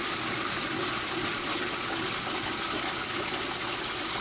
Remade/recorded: recorded